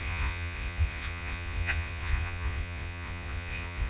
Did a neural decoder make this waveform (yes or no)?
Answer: yes